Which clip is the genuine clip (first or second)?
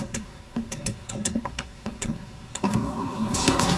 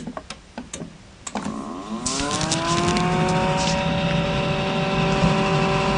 second